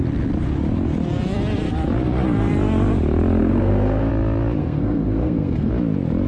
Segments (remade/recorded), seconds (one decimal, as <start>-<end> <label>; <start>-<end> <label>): 0.0-3.4 recorded; 3.4-4.1 remade; 4.1-4.6 recorded; 4.6-5.7 remade; 5.7-6.3 recorded